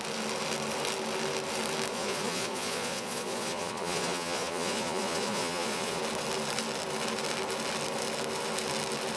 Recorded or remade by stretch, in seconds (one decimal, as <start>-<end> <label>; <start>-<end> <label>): 0.0-1.9 recorded; 1.9-6.0 remade; 6.0-9.2 recorded